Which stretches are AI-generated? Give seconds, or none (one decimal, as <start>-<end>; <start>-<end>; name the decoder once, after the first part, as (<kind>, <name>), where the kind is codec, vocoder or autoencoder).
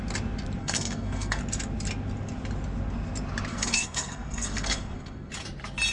0.6-1.4 (codec, SNAC); 3.5-5.3